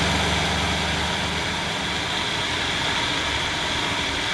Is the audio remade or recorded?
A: recorded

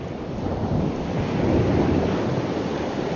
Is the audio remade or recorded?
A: recorded